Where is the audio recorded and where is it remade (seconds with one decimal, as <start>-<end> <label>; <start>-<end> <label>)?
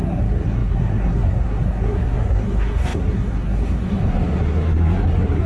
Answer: 0.0-5.5 remade